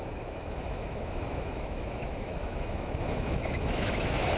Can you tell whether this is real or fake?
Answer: fake